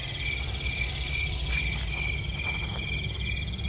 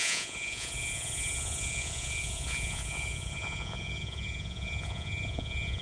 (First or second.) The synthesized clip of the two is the second